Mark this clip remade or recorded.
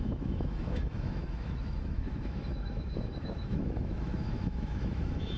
remade